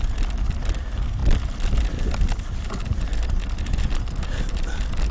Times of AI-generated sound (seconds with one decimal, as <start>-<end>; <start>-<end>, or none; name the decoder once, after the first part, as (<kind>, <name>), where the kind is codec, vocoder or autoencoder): none

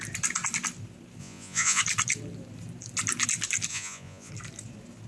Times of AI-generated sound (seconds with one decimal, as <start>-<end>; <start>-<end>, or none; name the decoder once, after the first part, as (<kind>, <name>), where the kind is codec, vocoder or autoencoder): 1.2-1.8 (vocoder, Vocos); 3.7-4.3

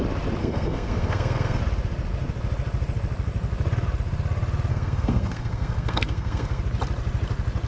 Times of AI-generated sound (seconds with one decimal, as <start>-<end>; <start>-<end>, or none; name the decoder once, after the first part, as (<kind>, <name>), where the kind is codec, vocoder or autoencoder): 0.4-1.6 (codec, SNAC); 4.7-6.6